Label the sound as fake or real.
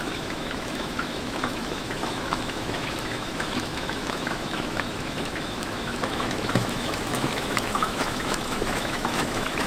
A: fake